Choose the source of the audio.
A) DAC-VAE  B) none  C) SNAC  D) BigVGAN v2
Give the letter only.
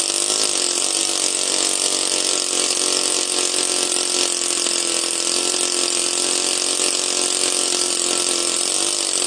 B